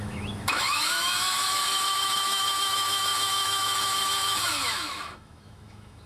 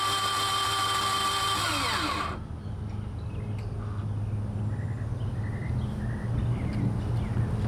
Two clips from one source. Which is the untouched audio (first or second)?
second